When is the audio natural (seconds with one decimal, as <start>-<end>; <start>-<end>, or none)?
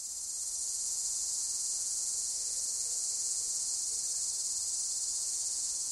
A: 0.0-0.6; 3.8-5.1